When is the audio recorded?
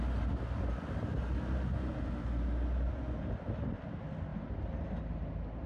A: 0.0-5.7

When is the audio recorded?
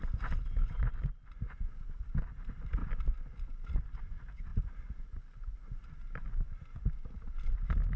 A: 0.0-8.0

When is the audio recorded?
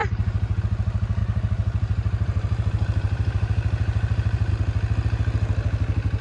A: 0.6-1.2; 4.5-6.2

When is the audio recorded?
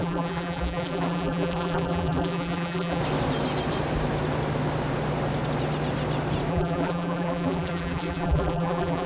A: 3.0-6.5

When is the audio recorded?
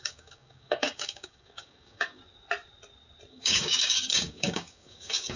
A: 2.2-3.3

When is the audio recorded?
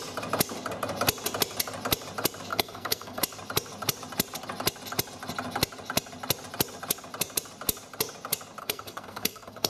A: 0.0-2.5; 3.2-8.6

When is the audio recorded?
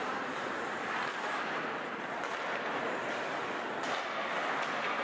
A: 0.8-5.0